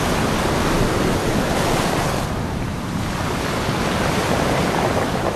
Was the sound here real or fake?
real